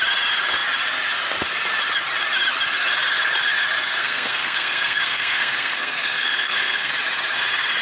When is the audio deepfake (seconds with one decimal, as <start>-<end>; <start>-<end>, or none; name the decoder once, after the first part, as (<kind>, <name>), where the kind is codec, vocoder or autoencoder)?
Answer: 4.0-6.9 (codec, SNAC)